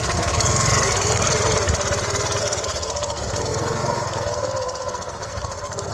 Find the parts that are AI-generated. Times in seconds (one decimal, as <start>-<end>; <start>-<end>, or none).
0.0-1.3; 2.4-5.9